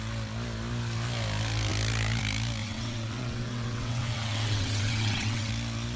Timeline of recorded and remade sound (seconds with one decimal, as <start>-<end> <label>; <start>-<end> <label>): 0.0-2.6 recorded; 2.6-5.5 remade; 5.5-6.0 recorded